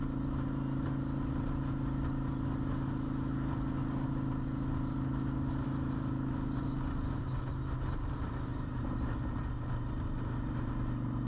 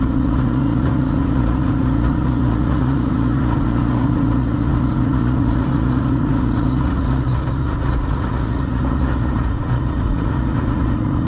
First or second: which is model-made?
second